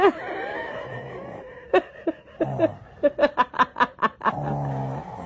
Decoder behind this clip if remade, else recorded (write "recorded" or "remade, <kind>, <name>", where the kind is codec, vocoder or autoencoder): recorded